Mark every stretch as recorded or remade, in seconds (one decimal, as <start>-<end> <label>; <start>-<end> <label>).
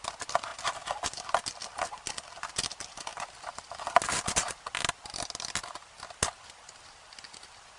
0.0-7.8 recorded